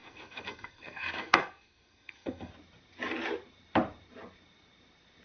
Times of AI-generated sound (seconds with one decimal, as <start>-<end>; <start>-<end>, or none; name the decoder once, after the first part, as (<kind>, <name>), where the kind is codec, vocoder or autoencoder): 0.0-2.5 (codec, SNAC)